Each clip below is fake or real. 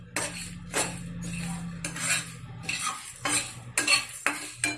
real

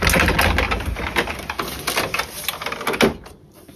real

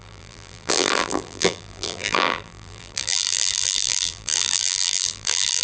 fake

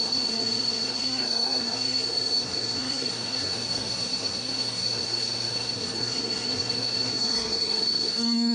fake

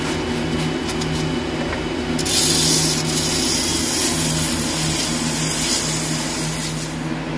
real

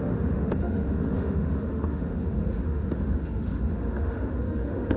fake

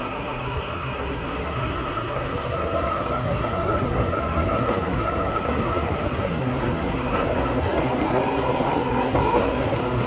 fake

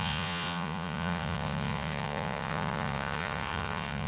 fake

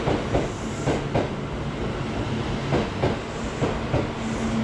real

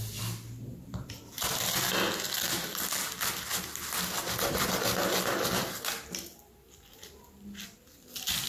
real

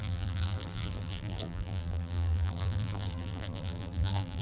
fake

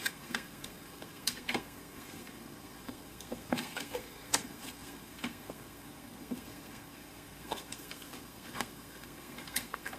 fake